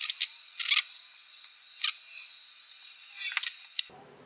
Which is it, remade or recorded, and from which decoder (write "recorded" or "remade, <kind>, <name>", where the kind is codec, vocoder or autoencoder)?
recorded